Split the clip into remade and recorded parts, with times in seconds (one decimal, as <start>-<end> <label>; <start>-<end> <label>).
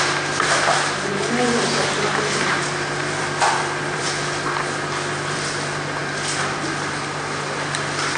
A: 0.0-3.0 recorded; 3.0-4.0 remade; 4.0-6.0 recorded; 6.0-6.6 remade; 6.6-8.2 recorded